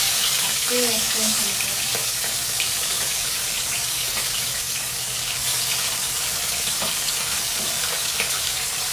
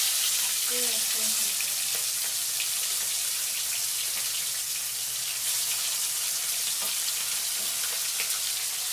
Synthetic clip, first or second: first